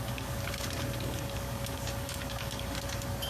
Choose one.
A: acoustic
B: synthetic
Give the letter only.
B